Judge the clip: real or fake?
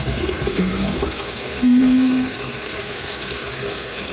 fake